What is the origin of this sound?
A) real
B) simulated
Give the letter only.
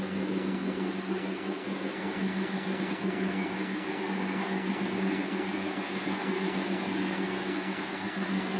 B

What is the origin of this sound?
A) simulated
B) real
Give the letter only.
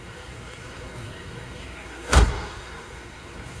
A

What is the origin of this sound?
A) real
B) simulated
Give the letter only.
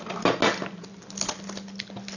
A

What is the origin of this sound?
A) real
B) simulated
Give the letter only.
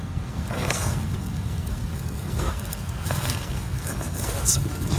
B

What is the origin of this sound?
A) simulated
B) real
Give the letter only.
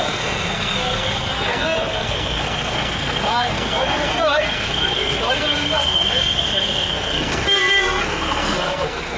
A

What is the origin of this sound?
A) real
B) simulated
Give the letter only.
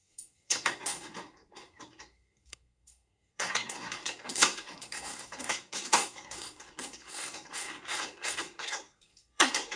B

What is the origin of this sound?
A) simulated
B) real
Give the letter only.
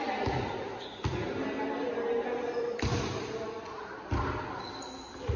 B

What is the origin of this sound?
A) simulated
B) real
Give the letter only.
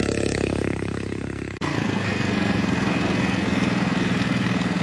A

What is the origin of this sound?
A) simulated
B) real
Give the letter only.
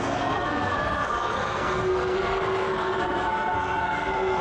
A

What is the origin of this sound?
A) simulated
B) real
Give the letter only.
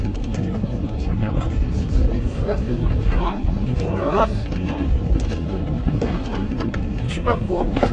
A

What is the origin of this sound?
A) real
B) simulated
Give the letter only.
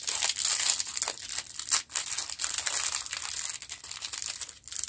A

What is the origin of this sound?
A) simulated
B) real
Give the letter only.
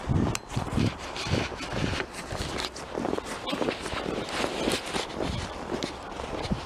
B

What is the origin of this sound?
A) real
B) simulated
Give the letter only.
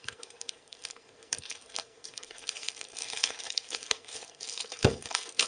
B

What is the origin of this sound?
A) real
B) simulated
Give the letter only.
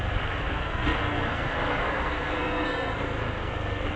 B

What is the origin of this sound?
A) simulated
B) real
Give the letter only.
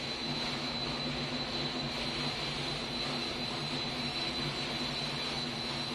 B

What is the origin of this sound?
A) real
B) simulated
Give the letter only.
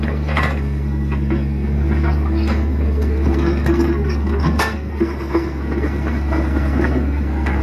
B